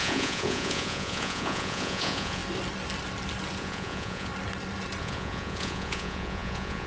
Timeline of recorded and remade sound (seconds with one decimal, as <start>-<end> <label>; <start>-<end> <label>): 0.0-2.4 remade; 2.4-3.6 recorded; 3.6-4.3 remade; 4.3-5.0 recorded; 5.0-6.9 remade